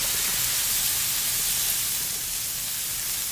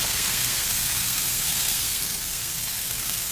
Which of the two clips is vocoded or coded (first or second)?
second